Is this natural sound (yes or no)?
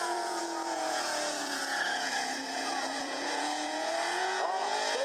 no